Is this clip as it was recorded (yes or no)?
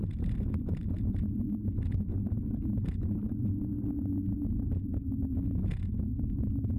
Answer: yes